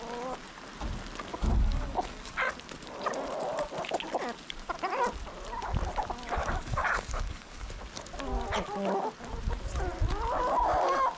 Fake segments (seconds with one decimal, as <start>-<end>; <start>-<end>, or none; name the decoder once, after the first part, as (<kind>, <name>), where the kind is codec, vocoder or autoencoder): 1.3-2.5 (codec, DAC); 6.4-7.8